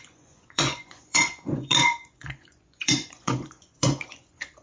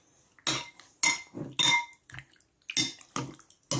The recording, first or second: second